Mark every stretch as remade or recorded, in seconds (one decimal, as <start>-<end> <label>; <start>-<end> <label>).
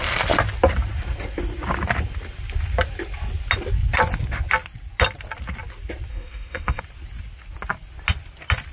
0.0-6.1 recorded; 6.1-6.8 remade; 6.8-8.7 recorded